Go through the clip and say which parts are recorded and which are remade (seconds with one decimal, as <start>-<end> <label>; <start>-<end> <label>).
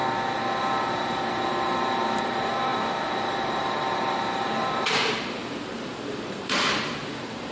0.0-0.6 recorded; 0.6-7.5 remade